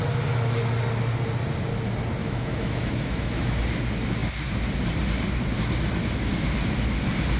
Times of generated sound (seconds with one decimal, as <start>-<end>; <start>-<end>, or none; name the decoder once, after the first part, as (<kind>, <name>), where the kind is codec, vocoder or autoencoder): 2.2-3.6 (autoencoder, DAC-VAE)